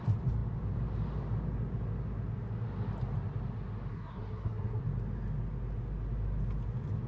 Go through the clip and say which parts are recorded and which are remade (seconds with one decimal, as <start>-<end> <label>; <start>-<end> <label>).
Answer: 0.0-3.9 recorded; 3.9-4.8 remade; 4.8-7.1 recorded